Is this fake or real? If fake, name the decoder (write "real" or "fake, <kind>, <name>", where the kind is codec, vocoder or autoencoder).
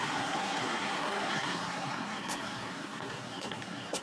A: fake, codec, SNAC